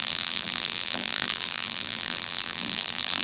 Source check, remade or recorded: remade